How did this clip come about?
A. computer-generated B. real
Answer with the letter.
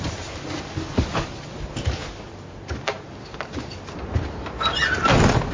B